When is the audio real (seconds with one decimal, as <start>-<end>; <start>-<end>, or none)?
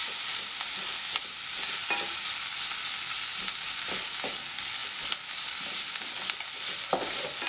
0.5-7.5